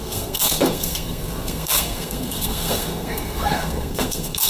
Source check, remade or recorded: remade